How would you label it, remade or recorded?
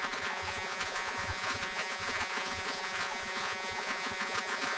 remade